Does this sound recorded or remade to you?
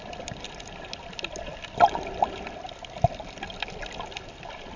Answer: recorded